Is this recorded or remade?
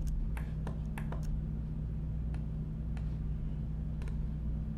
recorded